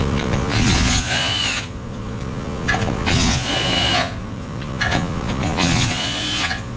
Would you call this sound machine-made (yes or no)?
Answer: yes